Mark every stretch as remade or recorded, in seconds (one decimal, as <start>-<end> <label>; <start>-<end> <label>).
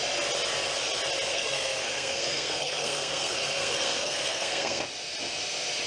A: 0.0-1.3 recorded; 1.3-4.8 remade; 4.8-5.9 recorded